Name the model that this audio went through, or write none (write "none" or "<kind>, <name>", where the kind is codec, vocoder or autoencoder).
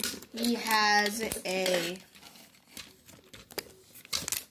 none